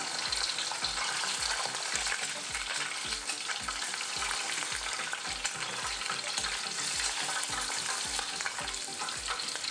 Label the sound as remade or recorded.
recorded